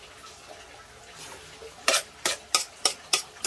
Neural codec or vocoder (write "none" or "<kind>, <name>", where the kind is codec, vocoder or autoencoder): none